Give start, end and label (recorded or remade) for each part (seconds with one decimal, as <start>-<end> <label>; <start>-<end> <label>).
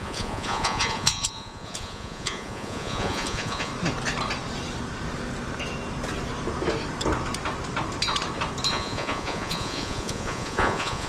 0.0-3.7 remade; 3.7-8.7 recorded; 8.7-11.1 remade